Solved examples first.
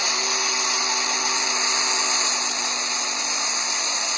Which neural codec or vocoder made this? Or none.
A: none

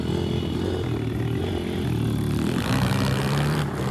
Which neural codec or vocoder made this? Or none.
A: none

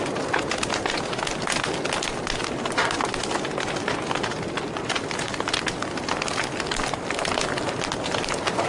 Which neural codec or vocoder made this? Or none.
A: none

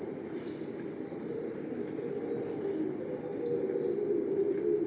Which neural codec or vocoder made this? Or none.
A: none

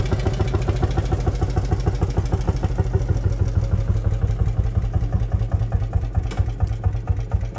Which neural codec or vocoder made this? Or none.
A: none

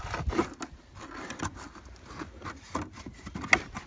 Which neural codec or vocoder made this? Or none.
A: none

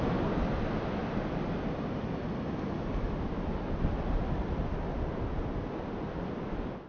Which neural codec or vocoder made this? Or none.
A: none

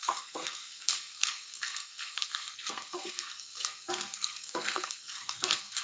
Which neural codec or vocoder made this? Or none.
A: codec, SNAC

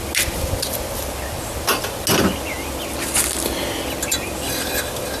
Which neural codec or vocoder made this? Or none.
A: none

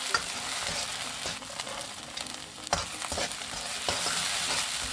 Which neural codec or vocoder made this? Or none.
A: none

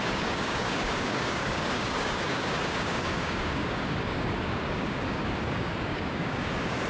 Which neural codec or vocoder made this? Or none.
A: codec, DAC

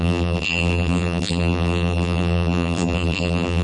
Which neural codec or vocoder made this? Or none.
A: vocoder, BigVGAN v2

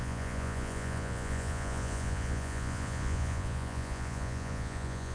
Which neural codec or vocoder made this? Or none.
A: vocoder, Vocos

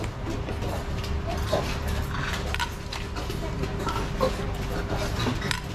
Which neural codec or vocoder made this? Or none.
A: none